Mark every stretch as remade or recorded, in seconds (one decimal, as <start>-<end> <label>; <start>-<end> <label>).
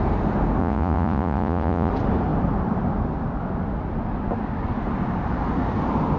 0.0-0.6 recorded; 0.6-1.9 remade; 1.9-6.2 recorded